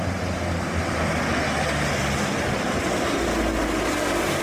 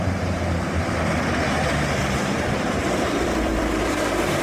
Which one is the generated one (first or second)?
second